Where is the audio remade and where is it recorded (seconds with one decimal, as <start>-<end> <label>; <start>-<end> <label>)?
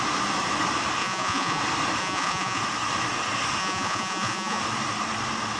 0.0-1.0 recorded; 1.0-1.6 remade; 1.6-2.0 recorded; 2.0-2.6 remade; 2.6-3.6 recorded; 3.6-4.6 remade; 4.6-5.6 recorded